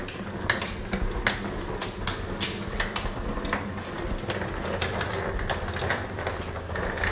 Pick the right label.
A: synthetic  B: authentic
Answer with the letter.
B